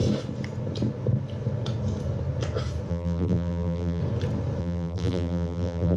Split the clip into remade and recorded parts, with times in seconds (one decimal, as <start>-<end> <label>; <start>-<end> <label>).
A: 0.0-2.9 recorded; 2.9-4.0 remade; 4.0-4.6 recorded; 4.6-6.0 remade